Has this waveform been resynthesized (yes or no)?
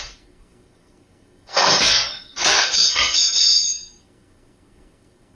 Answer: yes